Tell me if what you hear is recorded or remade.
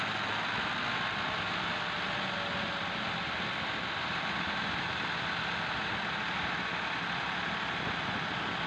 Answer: recorded